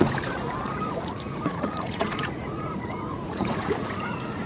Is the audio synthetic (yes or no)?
yes